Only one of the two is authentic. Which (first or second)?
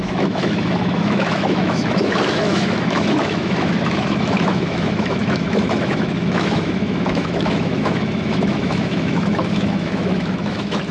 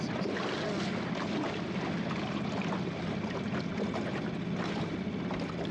second